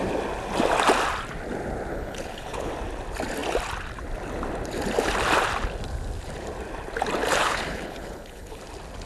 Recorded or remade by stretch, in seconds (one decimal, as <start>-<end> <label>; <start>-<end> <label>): 0.0-1.9 recorded; 1.9-2.7 remade; 2.7-7.4 recorded; 7.4-8.6 remade; 8.6-9.1 recorded